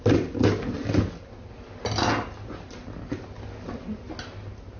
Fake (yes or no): no